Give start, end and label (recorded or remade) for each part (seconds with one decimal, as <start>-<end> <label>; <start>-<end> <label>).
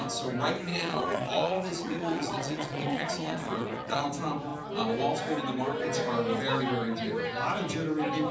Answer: 0.0-0.7 recorded; 0.7-4.0 remade; 4.0-8.3 recorded